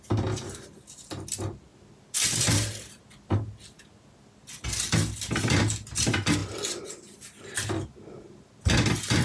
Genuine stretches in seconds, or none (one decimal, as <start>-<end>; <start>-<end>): 0.0-9.2